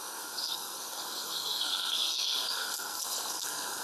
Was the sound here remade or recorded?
remade